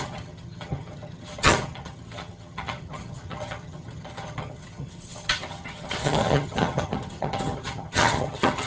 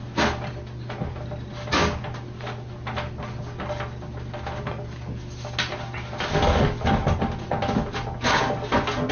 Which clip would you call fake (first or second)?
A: first